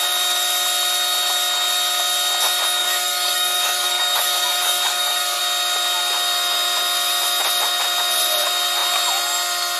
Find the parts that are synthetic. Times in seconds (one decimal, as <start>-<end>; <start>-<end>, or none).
2.8-5.4